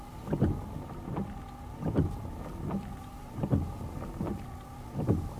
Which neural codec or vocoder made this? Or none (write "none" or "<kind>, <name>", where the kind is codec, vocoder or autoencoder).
none